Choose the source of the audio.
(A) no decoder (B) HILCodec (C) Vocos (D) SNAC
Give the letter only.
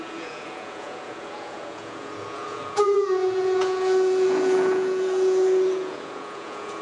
C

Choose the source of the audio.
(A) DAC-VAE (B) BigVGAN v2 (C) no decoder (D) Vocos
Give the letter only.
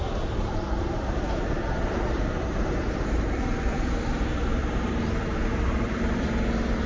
B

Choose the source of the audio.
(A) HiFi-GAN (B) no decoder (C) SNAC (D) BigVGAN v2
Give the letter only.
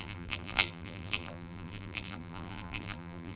D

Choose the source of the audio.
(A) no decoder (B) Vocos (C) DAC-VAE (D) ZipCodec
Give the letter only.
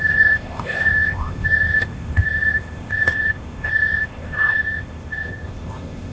D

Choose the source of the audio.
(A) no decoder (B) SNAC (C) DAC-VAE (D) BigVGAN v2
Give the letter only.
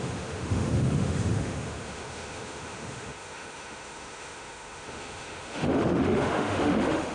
C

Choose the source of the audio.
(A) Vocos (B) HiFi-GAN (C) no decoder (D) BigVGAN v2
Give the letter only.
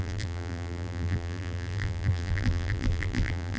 D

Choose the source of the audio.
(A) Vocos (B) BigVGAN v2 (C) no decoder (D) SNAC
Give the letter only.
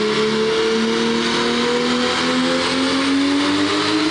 C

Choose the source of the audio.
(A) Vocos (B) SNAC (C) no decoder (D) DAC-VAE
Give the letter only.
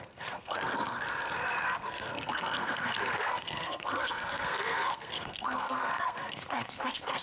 B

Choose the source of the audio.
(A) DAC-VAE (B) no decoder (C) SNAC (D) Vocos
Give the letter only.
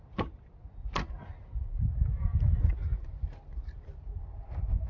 B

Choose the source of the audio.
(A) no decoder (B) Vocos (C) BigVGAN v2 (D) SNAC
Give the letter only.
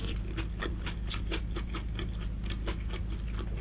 A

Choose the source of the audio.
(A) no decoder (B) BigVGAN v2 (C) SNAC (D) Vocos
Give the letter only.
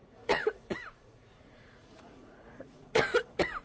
D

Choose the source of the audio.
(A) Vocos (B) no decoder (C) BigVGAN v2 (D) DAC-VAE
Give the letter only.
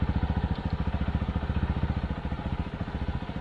B